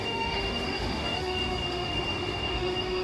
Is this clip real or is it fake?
fake